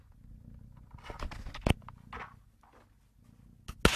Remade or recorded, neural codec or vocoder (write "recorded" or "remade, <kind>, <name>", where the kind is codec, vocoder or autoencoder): recorded